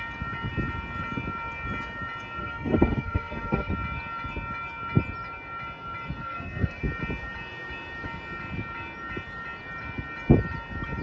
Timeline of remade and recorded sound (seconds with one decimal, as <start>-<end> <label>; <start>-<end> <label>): 0.0-2.4 recorded; 2.4-3.7 remade; 3.7-6.2 recorded; 6.2-6.8 remade; 6.8-11.0 recorded